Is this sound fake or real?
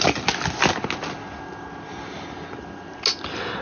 real